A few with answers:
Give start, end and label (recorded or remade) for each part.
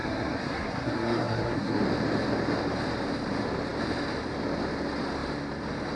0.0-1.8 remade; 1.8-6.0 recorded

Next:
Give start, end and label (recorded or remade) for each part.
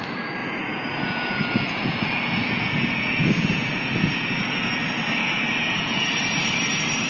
0.0-0.4 recorded; 0.4-4.7 remade; 4.7-5.2 recorded; 5.2-6.2 remade; 6.2-7.1 recorded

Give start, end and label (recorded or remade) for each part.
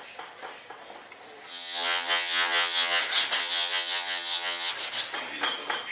0.0-1.5 recorded; 1.5-3.0 remade; 3.0-3.4 recorded; 3.4-4.7 remade; 4.7-5.9 recorded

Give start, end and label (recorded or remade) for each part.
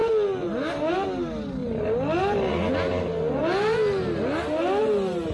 0.0-5.3 recorded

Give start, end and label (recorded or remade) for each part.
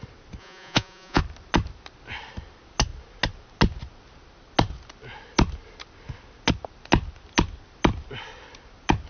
0.0-0.4 recorded; 0.4-1.2 remade; 1.2-9.1 recorded